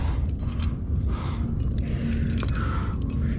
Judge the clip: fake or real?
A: real